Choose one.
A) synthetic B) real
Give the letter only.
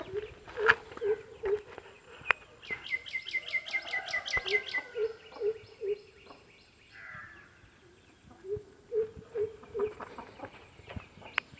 B